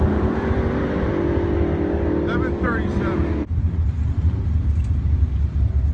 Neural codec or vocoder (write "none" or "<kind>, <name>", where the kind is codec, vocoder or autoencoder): vocoder, BigVGAN v2